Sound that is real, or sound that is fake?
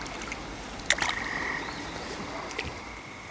real